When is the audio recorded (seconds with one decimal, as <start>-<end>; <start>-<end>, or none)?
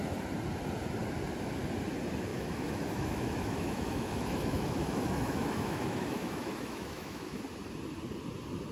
0.0-2.3; 7.4-8.7